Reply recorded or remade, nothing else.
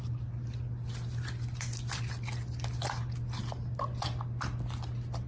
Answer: recorded